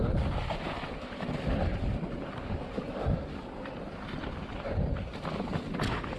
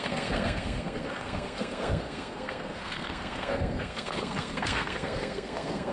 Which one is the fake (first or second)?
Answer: second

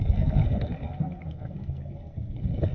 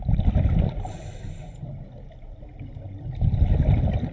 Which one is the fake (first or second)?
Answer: first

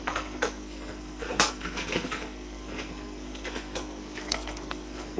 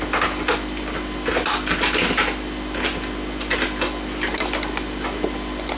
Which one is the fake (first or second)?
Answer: first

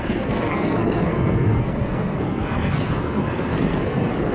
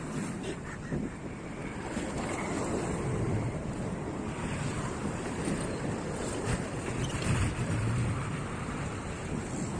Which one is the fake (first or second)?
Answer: first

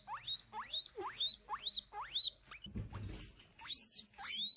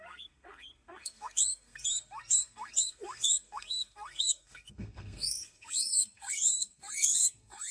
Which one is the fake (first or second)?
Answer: second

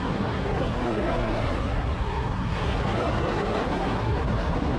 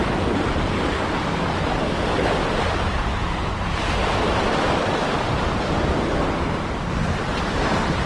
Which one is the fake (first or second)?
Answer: first